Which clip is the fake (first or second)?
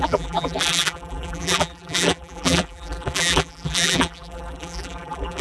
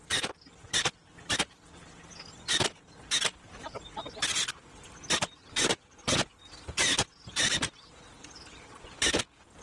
first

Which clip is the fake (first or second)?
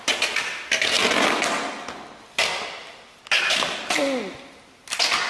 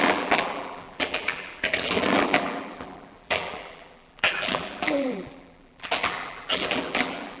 second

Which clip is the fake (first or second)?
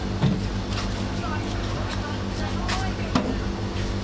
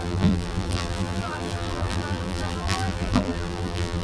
second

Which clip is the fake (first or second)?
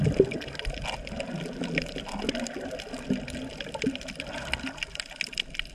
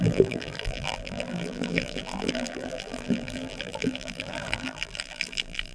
second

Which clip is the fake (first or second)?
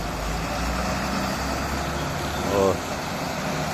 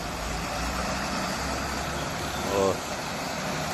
second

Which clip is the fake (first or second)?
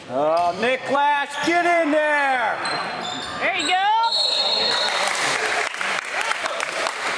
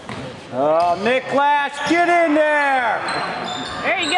first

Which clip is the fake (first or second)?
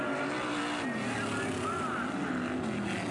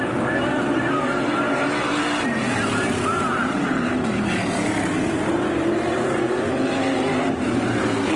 second